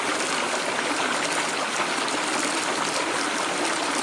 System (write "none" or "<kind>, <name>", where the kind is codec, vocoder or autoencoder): none